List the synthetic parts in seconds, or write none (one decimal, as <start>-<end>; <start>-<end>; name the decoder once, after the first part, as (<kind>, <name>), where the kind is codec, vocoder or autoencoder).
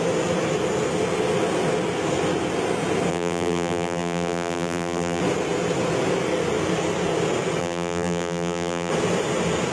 3.1-5.2 (vocoder, BigVGAN v2); 7.6-8.9